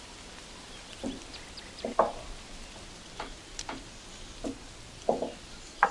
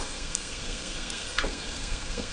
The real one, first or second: first